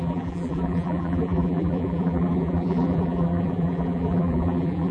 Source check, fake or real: fake